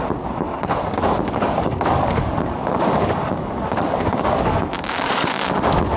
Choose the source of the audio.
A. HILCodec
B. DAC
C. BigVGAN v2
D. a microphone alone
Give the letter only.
B